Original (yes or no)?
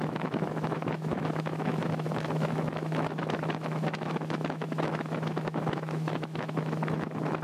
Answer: no